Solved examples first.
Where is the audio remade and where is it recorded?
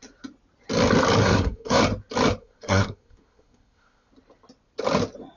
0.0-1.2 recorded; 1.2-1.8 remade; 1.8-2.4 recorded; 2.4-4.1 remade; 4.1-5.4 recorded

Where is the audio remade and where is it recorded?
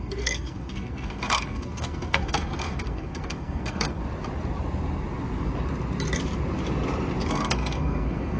0.0-4.0 remade; 4.0-7.3 recorded; 7.3-8.4 remade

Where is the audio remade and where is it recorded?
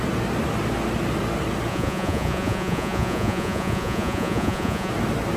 0.0-1.7 recorded; 1.7-4.9 remade; 4.9-5.4 recorded